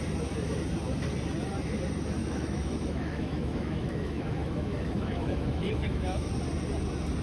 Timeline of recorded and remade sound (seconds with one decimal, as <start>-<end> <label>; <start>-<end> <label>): 0.0-2.2 recorded; 2.2-6.3 remade; 6.3-7.2 recorded

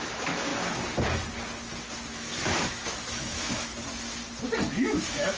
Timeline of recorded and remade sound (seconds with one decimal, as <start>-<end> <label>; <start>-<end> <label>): 0.0-0.5 remade; 0.5-2.1 recorded; 2.1-3.7 remade; 3.7-4.7 recorded; 4.7-5.4 remade